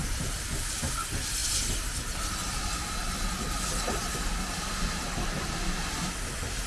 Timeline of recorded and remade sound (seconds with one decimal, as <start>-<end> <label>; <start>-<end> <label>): 0.0-6.7 recorded